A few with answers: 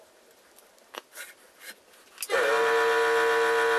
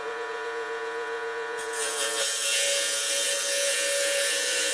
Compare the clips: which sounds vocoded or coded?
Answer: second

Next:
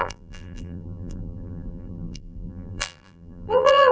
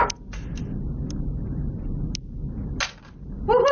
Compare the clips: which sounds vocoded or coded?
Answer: first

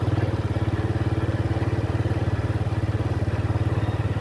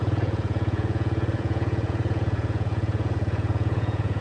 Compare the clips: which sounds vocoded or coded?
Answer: second